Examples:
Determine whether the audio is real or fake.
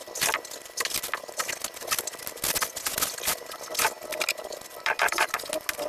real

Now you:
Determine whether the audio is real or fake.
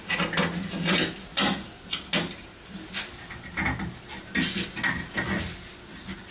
real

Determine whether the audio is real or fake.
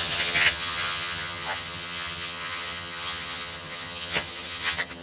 fake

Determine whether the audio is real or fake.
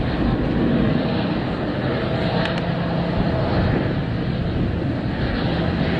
real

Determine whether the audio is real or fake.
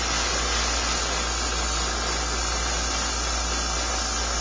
real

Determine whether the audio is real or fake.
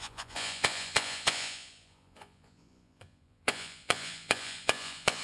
fake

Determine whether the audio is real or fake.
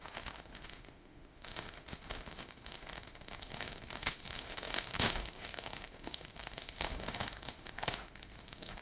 fake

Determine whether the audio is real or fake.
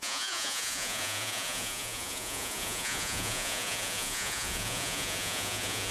fake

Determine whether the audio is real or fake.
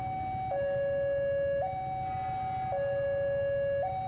real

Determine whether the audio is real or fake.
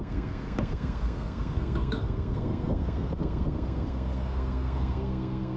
fake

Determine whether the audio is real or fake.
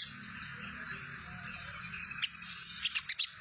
real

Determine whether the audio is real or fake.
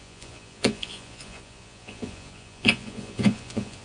fake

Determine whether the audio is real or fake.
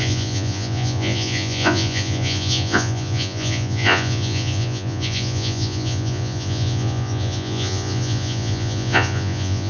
fake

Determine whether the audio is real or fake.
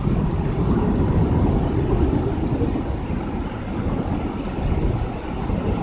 real